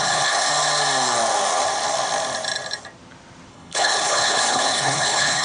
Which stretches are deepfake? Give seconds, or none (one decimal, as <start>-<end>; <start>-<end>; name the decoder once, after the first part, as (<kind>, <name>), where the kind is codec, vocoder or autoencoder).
0.0-0.5 (codec, HILCodec); 3.5-5.4